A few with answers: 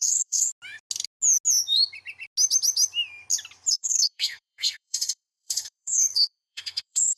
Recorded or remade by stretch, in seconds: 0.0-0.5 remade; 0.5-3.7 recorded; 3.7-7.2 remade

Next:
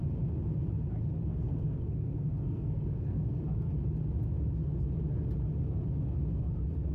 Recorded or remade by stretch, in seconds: 0.0-1.3 recorded; 1.3-3.4 remade; 3.4-6.9 recorded

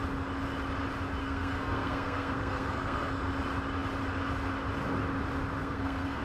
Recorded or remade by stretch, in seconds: 0.0-1.2 recorded; 1.2-3.1 remade; 3.1-5.6 recorded; 5.6-6.2 remade